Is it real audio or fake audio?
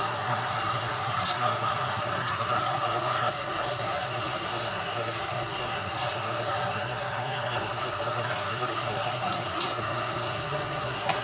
fake